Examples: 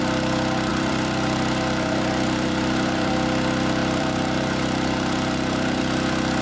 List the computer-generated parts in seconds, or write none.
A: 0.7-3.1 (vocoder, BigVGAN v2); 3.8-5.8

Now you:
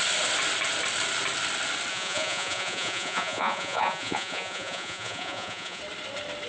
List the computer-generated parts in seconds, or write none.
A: 1.9-5.8 (vocoder, Vocos)

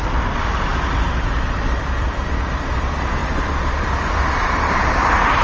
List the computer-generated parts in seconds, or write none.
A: 0.0-0.7 (vocoder, BigVGAN v2); 2.2-5.4

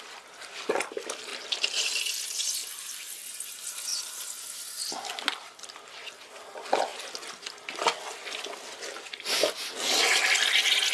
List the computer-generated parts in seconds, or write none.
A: 1.3-2.1 (vocoder, BigVGAN v2); 2.6-3.1

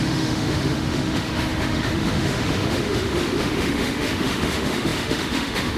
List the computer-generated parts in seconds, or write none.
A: 0.0-5.8 (autoencoder, DAC-VAE)

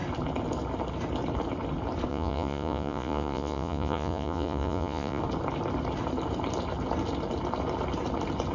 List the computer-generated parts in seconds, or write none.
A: 2.1-5.2 (vocoder, Vocos)

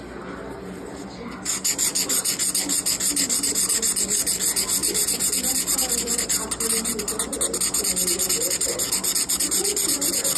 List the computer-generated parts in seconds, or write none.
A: 4.8-6.5 (vocoder, BigVGAN v2)